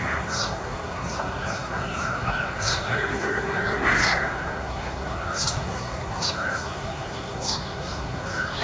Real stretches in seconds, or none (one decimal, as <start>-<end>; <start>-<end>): none